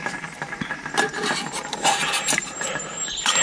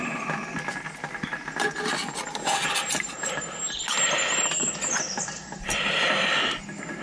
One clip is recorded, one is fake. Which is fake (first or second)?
first